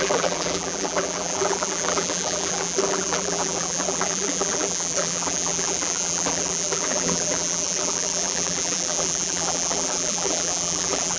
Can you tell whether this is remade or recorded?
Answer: remade